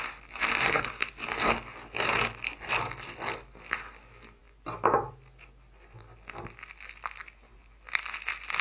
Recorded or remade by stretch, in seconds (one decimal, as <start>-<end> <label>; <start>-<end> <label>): 0.0-8.6 recorded